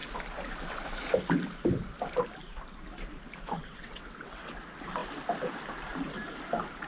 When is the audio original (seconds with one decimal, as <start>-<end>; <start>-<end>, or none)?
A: 0.0-3.6; 4.5-6.9

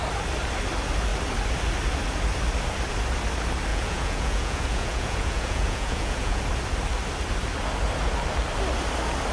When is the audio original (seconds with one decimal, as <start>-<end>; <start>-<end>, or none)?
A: 0.0-3.7; 6.4-9.3

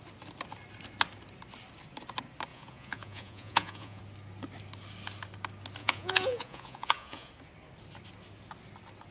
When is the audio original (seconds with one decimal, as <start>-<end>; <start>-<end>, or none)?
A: 0.0-2.5; 4.0-5.8; 7.3-9.1

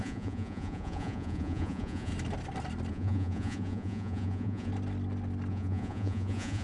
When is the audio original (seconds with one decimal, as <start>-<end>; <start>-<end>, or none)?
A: 2.1-2.9; 4.7-5.5

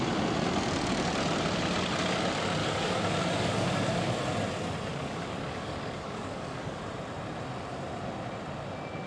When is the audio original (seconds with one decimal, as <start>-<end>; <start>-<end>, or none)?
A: 0.0-2.6; 4.1-4.9; 6.8-9.1

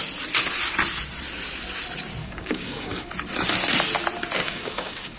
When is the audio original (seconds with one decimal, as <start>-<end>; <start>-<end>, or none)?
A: 0.0-2.2; 3.1-4.4

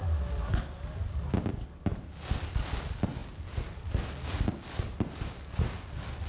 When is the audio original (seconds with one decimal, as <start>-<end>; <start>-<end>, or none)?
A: 0.0-6.3

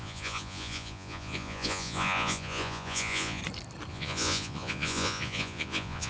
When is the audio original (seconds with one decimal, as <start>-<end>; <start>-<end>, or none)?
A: 3.4-3.9